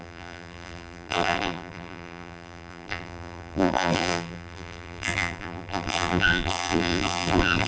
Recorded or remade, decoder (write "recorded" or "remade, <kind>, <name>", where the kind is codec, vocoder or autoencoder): remade, vocoder, BigVGAN v2